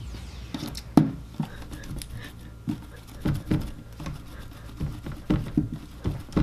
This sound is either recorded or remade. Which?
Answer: recorded